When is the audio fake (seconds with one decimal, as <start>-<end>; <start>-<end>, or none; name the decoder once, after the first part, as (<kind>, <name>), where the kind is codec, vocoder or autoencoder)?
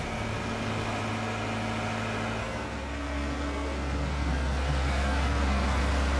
2.4-5.8 (codec, SNAC)